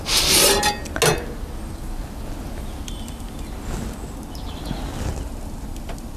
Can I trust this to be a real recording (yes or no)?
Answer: yes